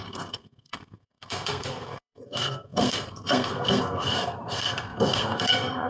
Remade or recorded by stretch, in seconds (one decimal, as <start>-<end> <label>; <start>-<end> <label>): 0.0-5.9 remade